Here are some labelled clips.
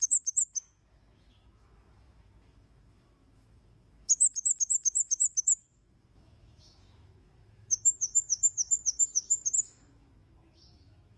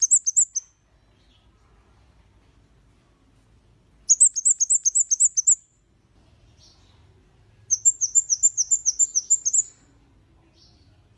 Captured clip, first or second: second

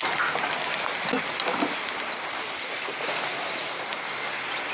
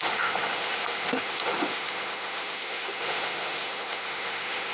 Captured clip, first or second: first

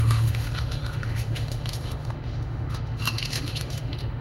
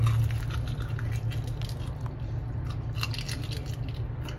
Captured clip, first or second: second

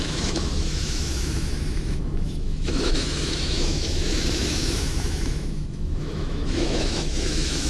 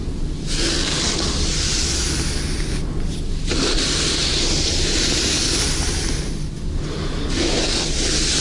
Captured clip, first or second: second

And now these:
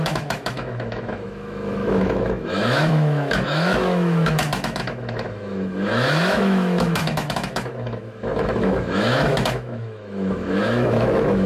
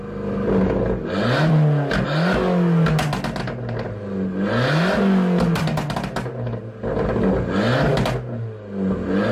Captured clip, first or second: second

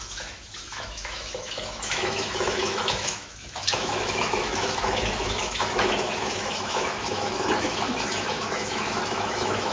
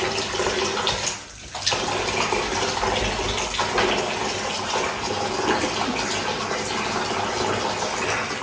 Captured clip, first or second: second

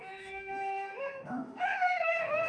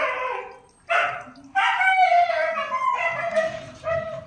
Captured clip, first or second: second